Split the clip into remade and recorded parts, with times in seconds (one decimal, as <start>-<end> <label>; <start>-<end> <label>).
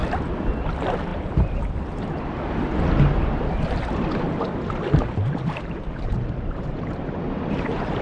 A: 0.0-0.7 recorded; 0.7-1.1 remade; 1.1-5.4 recorded; 5.4-8.0 remade